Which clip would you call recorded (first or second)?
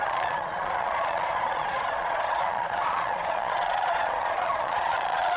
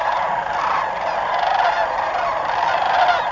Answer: second